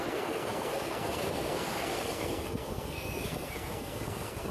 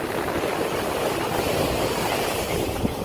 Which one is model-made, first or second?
first